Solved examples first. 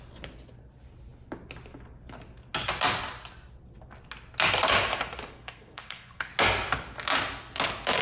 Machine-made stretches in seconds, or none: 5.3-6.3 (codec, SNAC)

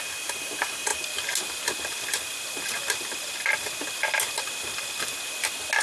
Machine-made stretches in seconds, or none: none

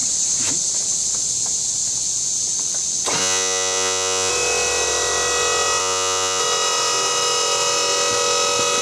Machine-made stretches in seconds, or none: 3.2-4.3 (vocoder, Vocos); 5.8-6.4

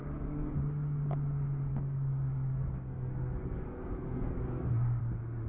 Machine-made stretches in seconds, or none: 0.0-0.5 (codec, SNAC); 1.7-5.0

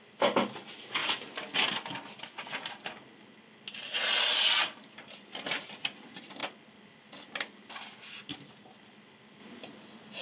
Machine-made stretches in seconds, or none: none

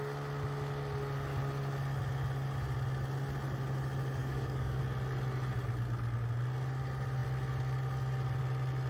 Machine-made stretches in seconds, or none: 4.2-4.8 (codec, DAC)

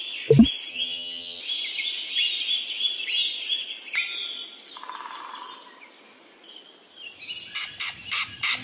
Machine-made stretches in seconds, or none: 0.7-1.4 (vocoder, HiFi-GAN)